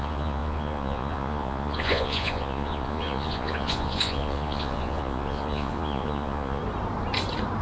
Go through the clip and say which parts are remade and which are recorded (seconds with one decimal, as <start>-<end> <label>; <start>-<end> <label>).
0.0-6.6 remade; 6.6-7.6 recorded